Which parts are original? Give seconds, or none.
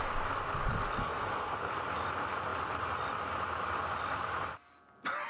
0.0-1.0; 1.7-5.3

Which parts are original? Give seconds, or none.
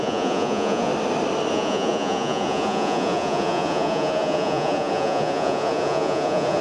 0.9-1.5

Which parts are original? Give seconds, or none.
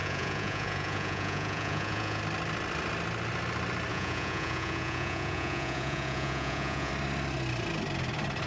2.2-3.9; 6.9-8.5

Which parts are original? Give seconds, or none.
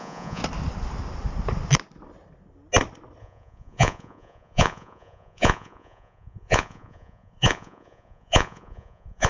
0.4-3.2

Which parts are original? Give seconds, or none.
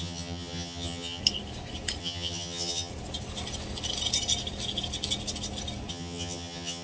1.2-2.0; 2.9-5.9